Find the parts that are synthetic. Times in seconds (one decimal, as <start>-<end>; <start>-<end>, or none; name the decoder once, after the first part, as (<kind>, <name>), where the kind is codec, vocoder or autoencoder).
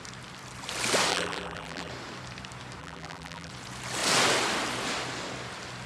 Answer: 1.1-1.9 (vocoder, BigVGAN v2); 2.8-3.5